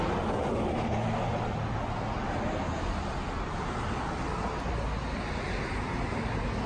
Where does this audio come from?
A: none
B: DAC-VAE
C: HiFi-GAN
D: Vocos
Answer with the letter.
A